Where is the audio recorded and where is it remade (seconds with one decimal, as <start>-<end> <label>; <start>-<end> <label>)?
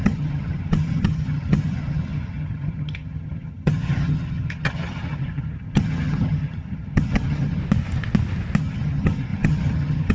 0.0-7.6 remade; 7.6-8.6 recorded; 8.6-10.1 remade